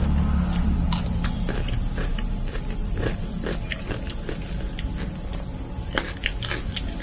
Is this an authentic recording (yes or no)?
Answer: yes